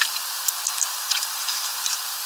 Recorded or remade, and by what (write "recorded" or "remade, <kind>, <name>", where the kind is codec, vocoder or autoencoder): remade, vocoder, BigVGAN v2